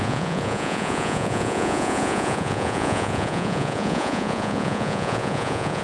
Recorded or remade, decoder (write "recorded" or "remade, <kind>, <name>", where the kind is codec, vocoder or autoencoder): remade, vocoder, Vocos